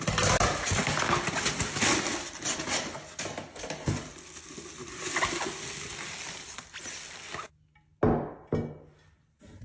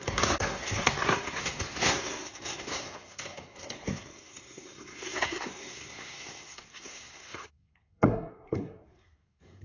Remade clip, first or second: second